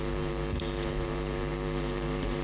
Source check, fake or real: fake